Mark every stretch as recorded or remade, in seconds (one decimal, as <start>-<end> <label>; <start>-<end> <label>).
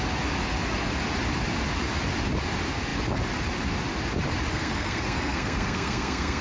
0.0-4.5 recorded; 4.5-6.4 remade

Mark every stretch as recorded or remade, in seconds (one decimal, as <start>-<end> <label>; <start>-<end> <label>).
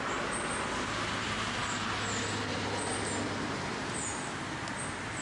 0.0-5.2 recorded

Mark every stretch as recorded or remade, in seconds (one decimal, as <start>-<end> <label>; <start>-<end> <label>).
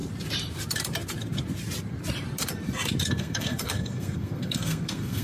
0.0-3.1 recorded; 3.1-5.2 remade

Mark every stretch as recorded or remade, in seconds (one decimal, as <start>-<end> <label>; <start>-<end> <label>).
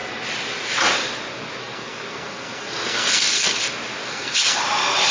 0.0-1.6 recorded; 1.6-3.6 remade; 3.6-4.0 recorded; 4.0-4.6 remade; 4.6-5.1 recorded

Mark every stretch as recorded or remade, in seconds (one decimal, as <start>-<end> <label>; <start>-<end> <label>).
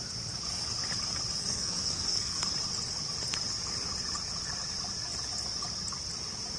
0.0-1.4 recorded; 1.4-2.4 remade; 2.4-6.6 recorded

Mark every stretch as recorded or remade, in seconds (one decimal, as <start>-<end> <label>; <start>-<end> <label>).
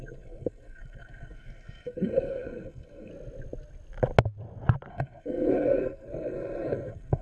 0.0-3.1 remade; 3.1-4.9 recorded; 4.9-7.2 remade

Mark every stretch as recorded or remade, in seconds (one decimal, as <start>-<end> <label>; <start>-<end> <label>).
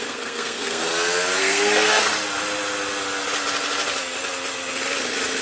0.0-0.9 remade; 0.9-1.4 recorded; 1.4-2.1 remade; 2.1-5.4 recorded